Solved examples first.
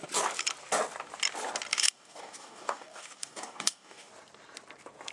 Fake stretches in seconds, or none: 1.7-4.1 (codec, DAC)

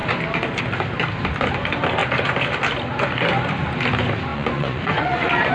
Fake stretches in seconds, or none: 4.3-5.5 (vocoder, Vocos)

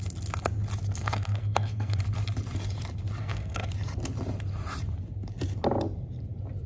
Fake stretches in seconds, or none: 1.0-2.0 (codec, SNAC); 3.2-3.7